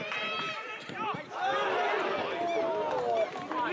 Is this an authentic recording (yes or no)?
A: yes